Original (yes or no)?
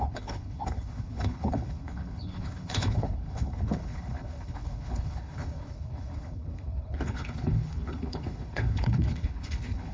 no